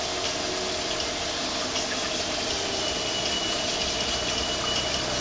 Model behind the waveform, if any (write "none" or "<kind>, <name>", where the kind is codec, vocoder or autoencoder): none